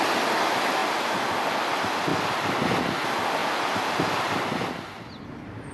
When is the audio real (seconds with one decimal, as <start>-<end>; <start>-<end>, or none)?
0.0-0.8; 1.6-3.4; 4.2-5.7